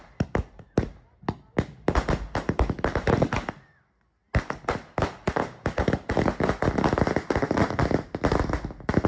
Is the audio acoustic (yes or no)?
yes